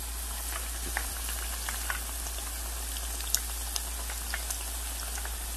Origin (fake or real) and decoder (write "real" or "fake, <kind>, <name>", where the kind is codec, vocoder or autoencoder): real